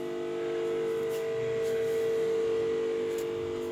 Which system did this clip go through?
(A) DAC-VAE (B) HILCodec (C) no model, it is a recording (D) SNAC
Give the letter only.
C